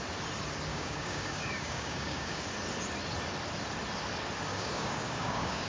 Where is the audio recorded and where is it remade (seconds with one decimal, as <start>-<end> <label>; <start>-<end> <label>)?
0.0-0.7 recorded; 0.7-2.5 remade; 2.5-4.5 recorded; 4.5-5.7 remade